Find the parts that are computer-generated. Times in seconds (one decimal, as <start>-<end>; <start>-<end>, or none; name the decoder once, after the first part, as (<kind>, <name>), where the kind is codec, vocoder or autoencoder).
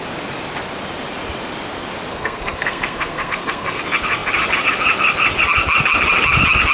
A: 2.1-3.8 (codec, SNAC)